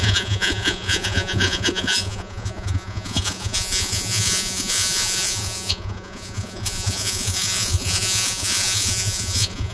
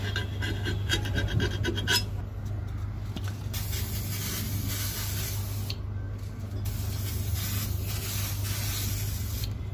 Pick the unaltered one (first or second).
second